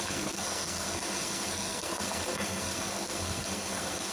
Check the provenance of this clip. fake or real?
fake